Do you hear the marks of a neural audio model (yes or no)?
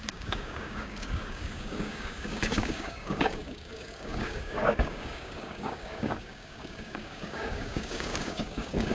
yes